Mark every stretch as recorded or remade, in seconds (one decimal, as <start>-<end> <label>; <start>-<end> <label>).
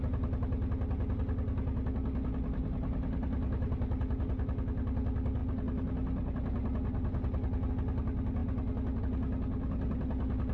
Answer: 0.0-10.5 recorded